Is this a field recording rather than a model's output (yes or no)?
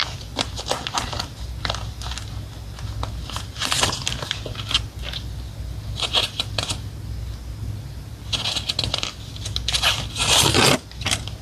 yes